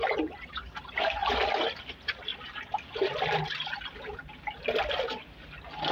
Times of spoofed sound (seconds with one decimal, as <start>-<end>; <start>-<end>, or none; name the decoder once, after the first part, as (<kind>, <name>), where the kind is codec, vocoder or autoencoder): 1.2-1.8 (vocoder, BigVGAN v2)